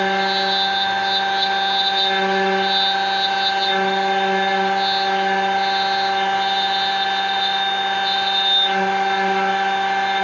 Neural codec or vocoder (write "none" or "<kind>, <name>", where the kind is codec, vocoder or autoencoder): none